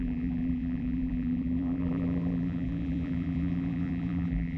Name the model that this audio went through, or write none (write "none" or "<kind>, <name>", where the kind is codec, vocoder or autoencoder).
vocoder, BigVGAN v2